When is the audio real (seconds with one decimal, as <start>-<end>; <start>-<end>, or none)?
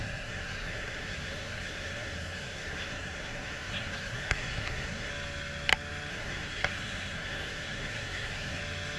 5.1-6.1; 8.6-9.0